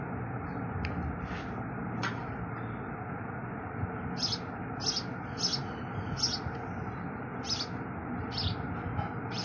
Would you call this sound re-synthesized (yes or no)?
no